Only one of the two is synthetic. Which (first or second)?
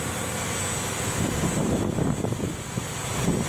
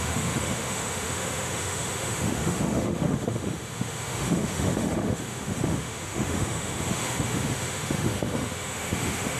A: second